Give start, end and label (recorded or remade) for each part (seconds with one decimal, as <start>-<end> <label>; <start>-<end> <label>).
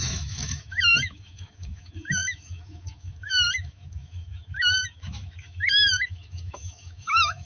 0.0-7.5 remade